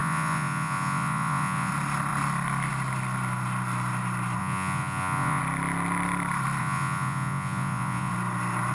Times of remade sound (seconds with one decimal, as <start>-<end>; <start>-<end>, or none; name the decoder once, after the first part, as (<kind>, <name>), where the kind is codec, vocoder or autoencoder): 0.0-1.7 (vocoder, Vocos); 4.4-5.4; 6.6-8.1

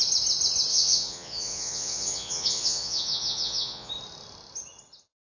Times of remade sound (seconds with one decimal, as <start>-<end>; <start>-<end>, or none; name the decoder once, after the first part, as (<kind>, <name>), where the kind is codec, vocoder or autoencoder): 0.7-3.9 (vocoder, Vocos)

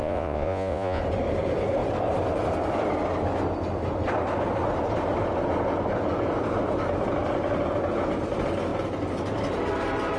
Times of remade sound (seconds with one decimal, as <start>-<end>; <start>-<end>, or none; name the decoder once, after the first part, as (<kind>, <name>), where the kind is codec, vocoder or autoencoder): 0.0-1.0 (vocoder, Vocos)

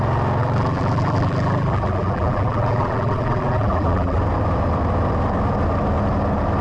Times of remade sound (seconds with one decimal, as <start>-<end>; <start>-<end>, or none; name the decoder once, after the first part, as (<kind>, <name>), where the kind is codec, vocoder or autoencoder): 0.4-4.2 (vocoder, BigVGAN v2)

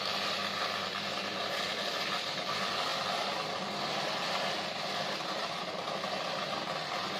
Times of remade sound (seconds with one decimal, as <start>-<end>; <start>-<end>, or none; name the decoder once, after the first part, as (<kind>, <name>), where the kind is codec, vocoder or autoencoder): none